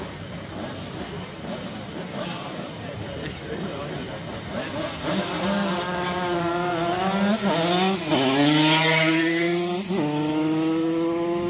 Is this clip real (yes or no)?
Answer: yes